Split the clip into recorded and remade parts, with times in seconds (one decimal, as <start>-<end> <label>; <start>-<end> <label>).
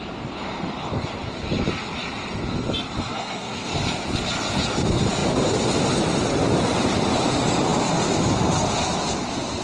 0.0-3.0 recorded; 3.0-3.7 remade; 3.7-9.6 recorded